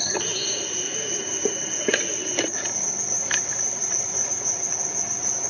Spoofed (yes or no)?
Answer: no